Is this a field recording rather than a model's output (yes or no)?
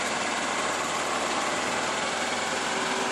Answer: yes